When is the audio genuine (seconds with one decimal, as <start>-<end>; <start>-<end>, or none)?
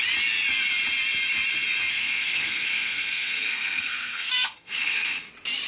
0.0-1.9; 5.3-5.7